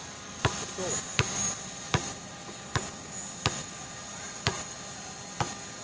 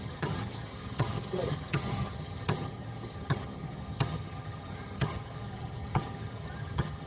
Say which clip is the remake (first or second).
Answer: second